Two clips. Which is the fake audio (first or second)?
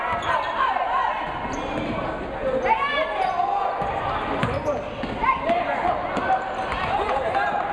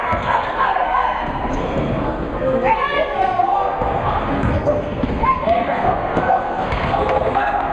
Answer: second